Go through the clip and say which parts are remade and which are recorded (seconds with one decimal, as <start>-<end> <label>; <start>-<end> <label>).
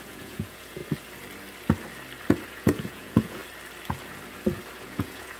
0.0-0.8 remade; 0.8-2.5 recorded; 2.5-3.4 remade; 3.4-4.8 recorded; 4.8-5.4 remade